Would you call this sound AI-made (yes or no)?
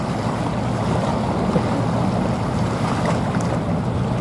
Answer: no